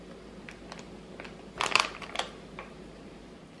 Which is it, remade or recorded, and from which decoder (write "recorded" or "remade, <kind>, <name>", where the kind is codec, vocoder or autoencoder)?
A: recorded